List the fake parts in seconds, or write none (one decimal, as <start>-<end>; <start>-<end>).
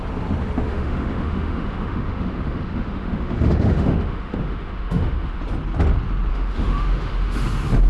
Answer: 0.7-5.4; 6.3-7.4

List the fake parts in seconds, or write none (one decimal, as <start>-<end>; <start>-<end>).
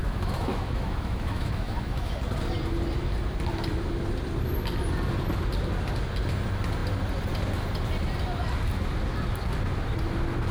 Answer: 0.0-2.2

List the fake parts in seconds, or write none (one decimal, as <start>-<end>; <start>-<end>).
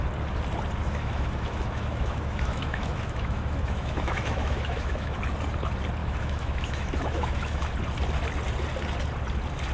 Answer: 0.8-5.2; 6.0-7.7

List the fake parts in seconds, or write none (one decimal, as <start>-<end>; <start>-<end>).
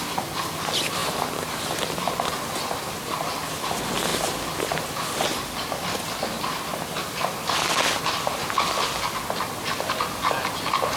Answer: none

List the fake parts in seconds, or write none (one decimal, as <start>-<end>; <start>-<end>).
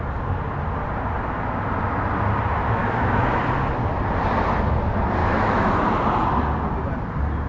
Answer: 2.8-3.4; 5.2-5.7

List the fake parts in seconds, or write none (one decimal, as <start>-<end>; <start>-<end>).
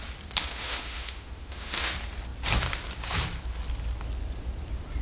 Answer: 0.4-1.9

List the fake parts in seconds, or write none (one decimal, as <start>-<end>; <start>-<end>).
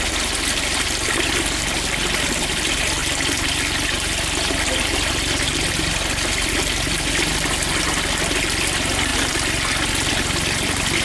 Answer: none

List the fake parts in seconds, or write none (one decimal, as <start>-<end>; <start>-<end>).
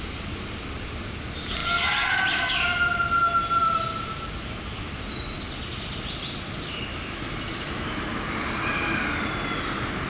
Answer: 6.9-8.0